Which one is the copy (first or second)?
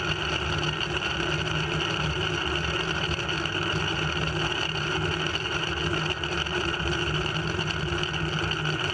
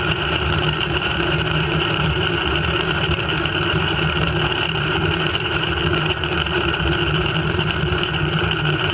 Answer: second